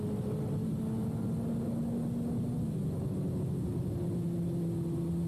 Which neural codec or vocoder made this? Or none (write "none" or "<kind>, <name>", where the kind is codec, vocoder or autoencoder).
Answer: none